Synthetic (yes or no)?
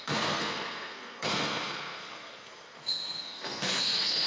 yes